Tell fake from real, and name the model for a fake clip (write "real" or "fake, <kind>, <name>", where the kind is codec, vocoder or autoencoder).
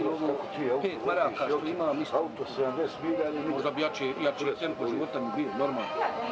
real